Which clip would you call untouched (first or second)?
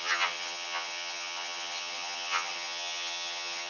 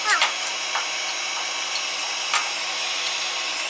second